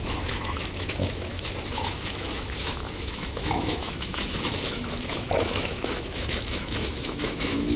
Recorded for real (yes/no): no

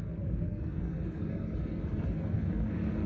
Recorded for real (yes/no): no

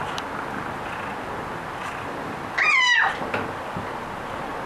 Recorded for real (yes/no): yes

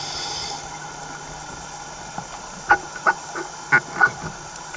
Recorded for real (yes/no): yes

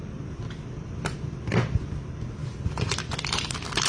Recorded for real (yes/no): no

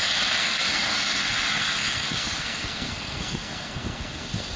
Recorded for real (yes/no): no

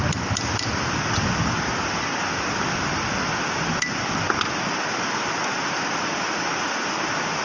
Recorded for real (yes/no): yes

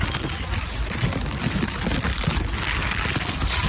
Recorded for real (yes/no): yes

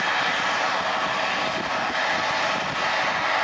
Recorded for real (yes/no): yes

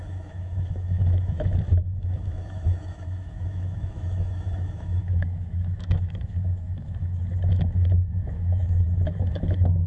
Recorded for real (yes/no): no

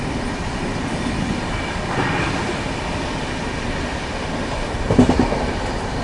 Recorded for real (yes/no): yes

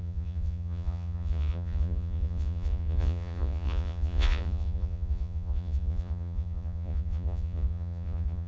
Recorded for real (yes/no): no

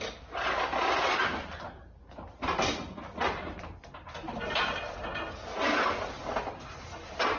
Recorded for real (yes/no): yes